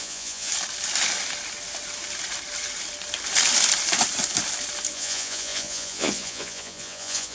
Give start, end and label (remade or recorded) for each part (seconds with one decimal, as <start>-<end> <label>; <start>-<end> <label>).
0.0-0.5 remade; 0.5-4.9 recorded; 4.9-7.3 remade